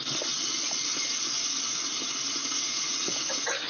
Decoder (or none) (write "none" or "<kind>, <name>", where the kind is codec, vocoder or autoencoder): none